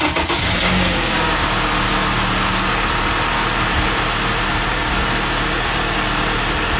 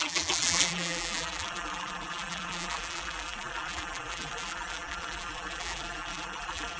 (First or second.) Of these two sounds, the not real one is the second